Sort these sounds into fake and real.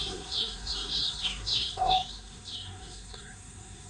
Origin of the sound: fake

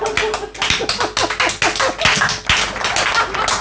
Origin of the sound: real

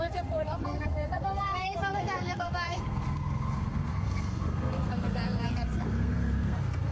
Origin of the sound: fake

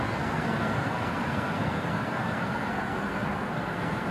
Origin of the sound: fake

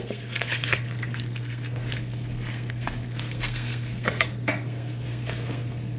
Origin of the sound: fake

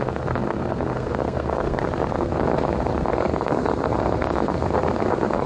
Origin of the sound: fake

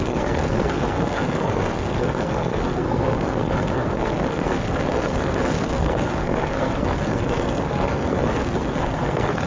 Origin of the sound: fake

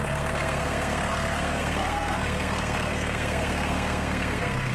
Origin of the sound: fake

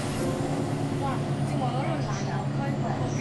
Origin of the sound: real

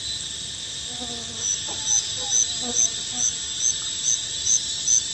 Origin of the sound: real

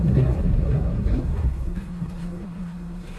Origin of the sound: fake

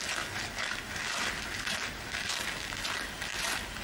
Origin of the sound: real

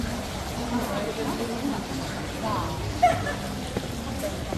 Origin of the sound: real